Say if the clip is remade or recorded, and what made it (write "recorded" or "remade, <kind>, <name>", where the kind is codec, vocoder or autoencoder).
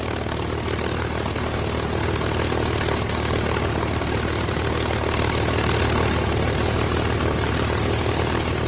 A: recorded